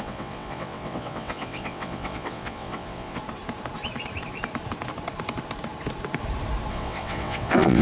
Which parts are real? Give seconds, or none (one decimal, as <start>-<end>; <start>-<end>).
3.2-6.7